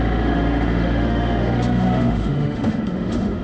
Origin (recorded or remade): remade